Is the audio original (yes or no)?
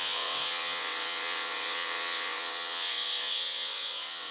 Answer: no